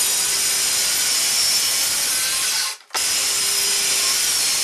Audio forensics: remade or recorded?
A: recorded